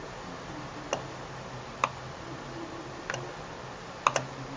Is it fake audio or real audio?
real